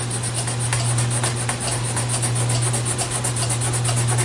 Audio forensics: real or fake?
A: real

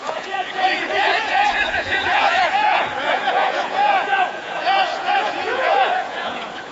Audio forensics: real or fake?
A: fake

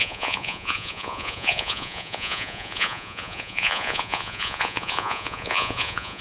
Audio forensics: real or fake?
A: fake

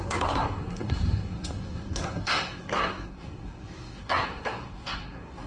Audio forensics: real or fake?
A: fake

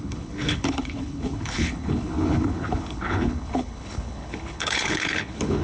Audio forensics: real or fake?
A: fake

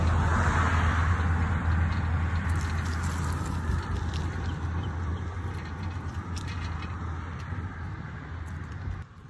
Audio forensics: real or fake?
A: real